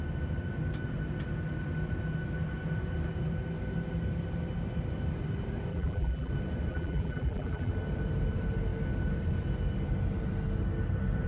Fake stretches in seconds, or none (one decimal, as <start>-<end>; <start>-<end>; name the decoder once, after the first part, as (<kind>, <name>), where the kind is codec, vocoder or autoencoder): 5.7-6.3 (vocoder, BigVGAN v2); 6.7-7.7